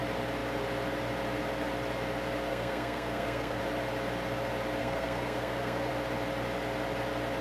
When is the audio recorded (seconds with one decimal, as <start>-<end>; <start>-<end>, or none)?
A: 0.0-2.5; 3.6-4.8; 5.9-7.4